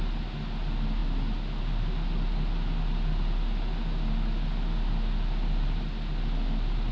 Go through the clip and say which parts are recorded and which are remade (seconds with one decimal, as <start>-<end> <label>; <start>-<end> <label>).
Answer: 0.0-6.9 recorded